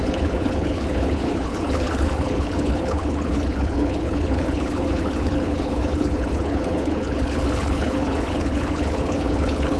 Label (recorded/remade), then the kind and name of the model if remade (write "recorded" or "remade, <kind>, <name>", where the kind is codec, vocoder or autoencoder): remade, codec, HILCodec